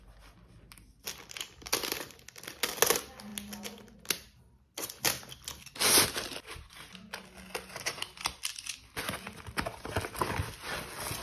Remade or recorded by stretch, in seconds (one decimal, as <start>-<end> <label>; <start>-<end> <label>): 0.0-11.2 recorded